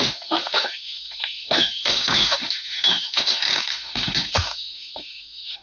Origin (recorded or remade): remade